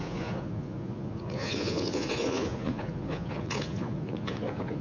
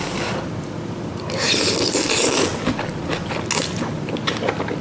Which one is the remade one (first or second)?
first